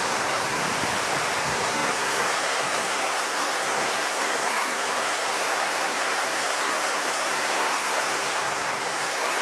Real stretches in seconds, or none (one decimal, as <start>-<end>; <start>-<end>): 0.6-1.4